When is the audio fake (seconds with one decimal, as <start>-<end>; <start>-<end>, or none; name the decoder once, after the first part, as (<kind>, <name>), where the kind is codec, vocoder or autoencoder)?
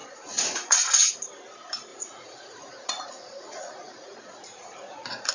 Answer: 0.0-1.1 (vocoder, Vocos); 1.9-5.3